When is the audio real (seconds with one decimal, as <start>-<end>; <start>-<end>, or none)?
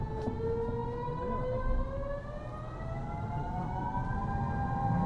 0.0-5.1